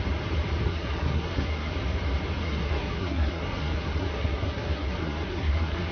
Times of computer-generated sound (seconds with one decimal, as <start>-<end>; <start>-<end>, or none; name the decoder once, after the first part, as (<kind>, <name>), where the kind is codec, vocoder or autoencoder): 0.6-1.7 (codec, SNAC); 2.4-5.9

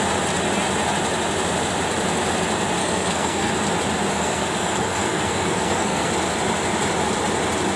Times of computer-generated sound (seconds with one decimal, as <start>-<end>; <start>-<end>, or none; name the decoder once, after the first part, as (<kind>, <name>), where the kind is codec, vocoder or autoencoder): 2.8-3.5 (codec, SNAC); 4.1-6.1

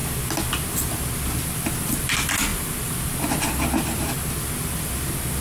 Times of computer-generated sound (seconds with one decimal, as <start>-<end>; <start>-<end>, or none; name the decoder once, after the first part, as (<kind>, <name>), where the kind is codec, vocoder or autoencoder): none

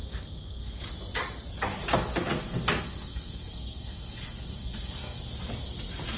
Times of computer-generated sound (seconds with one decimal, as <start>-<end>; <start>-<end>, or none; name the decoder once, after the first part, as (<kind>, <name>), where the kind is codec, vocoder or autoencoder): 0.0-0.8 (codec, SNAC); 1.9-5.2

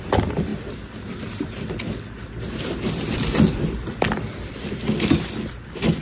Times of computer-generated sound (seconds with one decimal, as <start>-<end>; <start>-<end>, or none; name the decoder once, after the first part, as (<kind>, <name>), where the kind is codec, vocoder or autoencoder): none

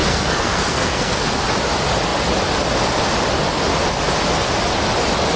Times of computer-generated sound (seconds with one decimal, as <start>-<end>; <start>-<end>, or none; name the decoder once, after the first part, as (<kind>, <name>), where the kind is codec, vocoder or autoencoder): 0.0-1.4 (codec, SNAC)

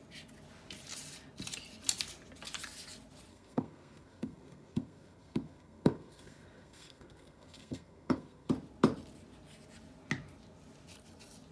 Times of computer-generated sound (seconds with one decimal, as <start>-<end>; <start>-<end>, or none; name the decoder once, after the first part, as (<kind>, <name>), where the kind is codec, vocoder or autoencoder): 3.3-8.5 (codec, SNAC)

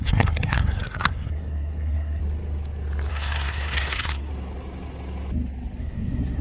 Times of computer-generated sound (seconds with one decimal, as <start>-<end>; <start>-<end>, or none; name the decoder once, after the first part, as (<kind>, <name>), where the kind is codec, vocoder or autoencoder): 0.0-2.2 (codec, SNAC); 3.1-4.3; 5.8-6.4